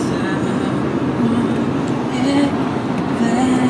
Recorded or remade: recorded